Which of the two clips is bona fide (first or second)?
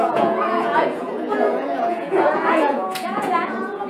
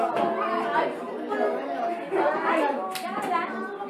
second